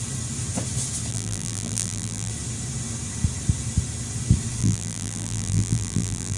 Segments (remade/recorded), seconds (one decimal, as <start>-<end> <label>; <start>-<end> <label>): 0.0-1.1 recorded; 1.1-2.3 remade; 2.3-4.6 recorded; 4.6-6.4 remade